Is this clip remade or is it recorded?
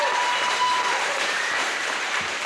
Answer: remade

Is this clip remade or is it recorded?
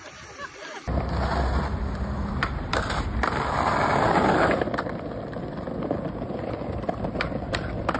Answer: remade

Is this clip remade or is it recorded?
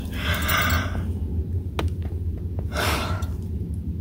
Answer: recorded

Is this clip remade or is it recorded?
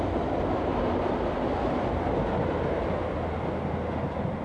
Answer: recorded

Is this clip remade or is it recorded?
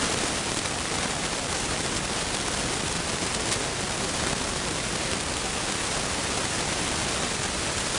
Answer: recorded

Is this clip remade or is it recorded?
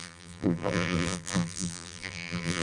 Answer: remade